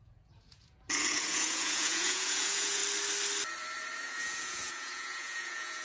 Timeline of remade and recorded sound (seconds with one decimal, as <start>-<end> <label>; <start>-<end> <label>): 0.0-2.8 remade; 2.8-4.0 recorded; 4.0-5.8 remade